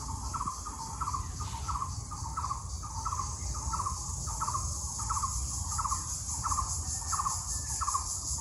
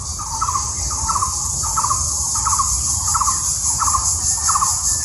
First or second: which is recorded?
first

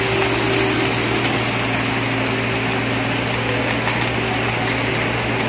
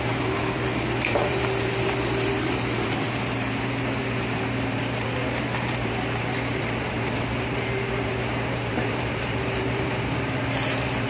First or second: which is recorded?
first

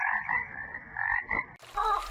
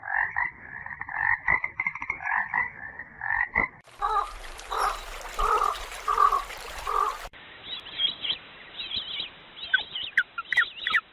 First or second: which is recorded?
first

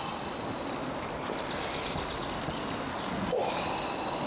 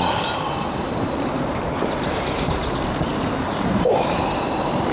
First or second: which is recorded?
first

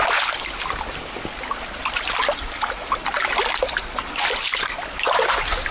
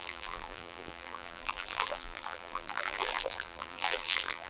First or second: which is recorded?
first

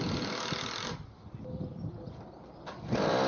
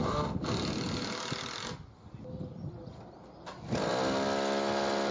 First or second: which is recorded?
second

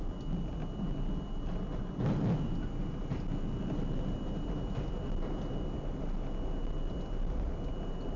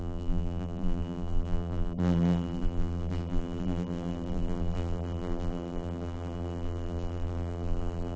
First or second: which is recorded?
first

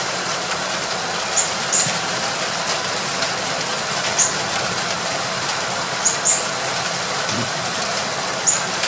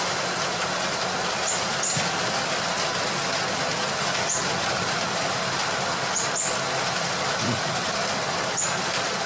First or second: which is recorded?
second